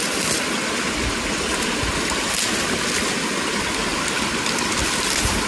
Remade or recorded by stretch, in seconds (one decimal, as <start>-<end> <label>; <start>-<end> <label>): 0.0-5.5 recorded